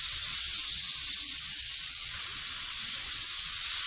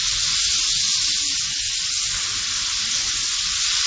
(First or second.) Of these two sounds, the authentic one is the second